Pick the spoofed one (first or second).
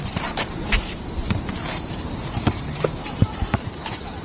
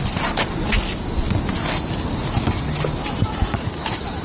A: first